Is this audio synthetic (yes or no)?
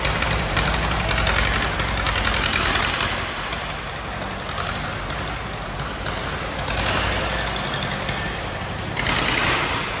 no